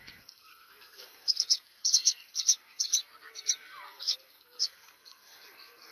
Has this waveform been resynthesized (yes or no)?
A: yes